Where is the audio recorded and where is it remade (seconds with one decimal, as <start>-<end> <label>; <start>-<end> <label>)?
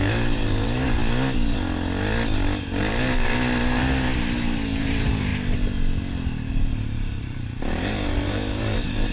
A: 0.0-1.0 remade; 1.0-2.8 recorded; 2.8-4.1 remade; 4.1-4.8 recorded; 4.8-5.3 remade; 5.3-6.5 recorded; 6.5-9.1 remade